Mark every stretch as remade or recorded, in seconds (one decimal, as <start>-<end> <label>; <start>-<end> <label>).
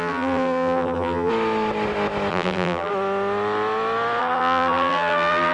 0.0-1.3 remade; 1.3-2.3 recorded; 2.3-2.9 remade; 2.9-4.2 recorded; 4.2-5.5 remade